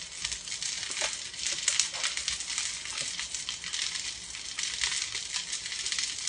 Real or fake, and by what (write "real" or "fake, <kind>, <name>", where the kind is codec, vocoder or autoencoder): real